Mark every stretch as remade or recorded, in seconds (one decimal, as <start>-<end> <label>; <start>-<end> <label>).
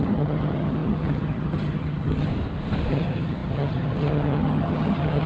0.0-2.3 remade; 2.3-2.9 recorded; 2.9-5.3 remade